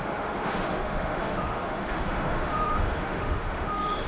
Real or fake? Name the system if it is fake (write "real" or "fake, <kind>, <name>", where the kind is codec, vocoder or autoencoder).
fake, autoencoder, DAC-VAE